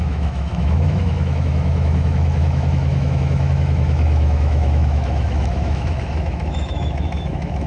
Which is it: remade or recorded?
remade